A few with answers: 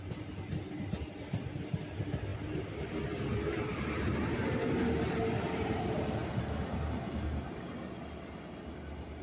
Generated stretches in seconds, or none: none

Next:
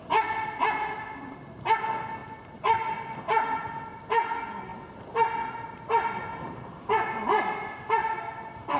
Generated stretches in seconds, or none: none

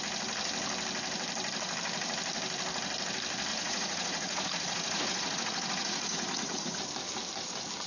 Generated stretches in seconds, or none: 3.5-6.8 (vocoder, Vocos)